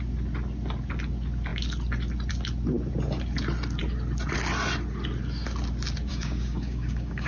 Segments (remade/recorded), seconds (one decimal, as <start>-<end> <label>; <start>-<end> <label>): 0.0-6.1 recorded; 6.1-7.3 remade